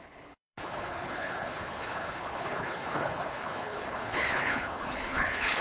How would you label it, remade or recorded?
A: remade